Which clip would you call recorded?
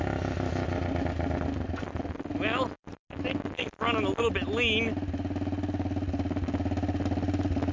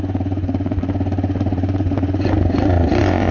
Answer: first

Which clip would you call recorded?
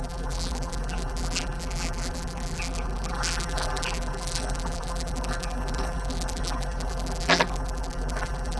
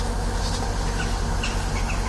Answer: second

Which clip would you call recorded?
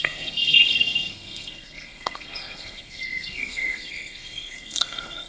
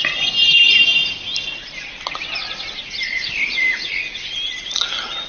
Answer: second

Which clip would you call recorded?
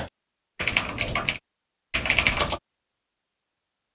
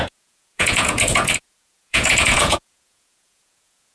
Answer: first